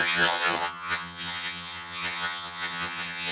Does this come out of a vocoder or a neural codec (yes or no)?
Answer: yes